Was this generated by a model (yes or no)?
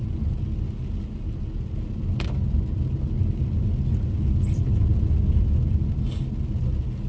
no